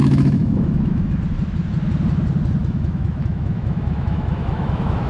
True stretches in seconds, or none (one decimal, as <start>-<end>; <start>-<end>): 1.2-2.6